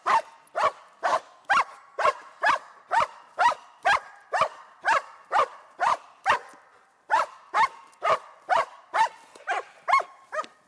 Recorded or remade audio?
recorded